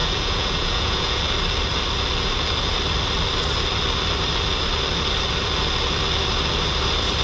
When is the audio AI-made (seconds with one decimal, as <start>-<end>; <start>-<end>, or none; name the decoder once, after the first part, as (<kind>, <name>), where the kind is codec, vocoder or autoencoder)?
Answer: 0.0-1.2 (vocoder, Vocos)